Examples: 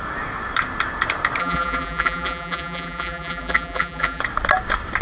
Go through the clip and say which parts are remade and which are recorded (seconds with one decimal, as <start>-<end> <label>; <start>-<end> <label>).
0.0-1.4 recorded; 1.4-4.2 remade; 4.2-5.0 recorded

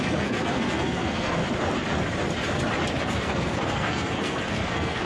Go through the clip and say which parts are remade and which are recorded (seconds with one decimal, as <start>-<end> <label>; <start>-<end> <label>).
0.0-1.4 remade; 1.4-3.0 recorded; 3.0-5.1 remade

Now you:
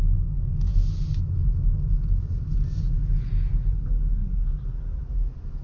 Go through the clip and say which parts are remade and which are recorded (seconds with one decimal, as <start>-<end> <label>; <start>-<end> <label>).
0.0-5.6 recorded

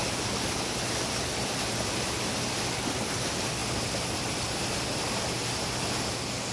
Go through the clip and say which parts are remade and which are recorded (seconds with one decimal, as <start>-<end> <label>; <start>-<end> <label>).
0.0-6.5 recorded